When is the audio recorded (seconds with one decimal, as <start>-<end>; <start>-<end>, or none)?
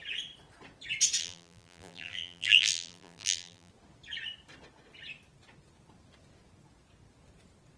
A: 0.0-1.2; 3.7-7.8